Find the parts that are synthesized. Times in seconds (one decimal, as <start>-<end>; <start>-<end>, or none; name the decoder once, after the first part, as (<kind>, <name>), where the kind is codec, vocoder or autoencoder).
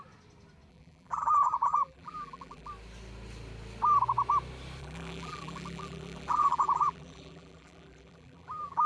0.7-2.7 (vocoder, BigVGAN v2); 4.8-8.9